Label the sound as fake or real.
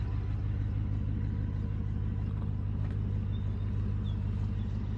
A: real